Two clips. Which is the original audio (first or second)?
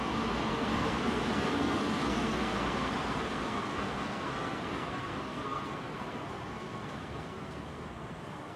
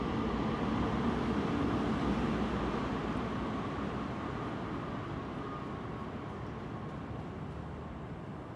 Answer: second